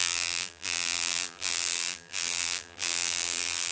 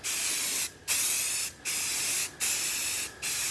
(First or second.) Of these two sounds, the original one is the second